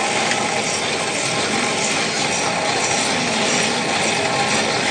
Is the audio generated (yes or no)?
no